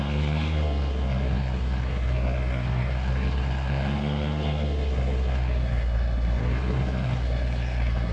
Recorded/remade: remade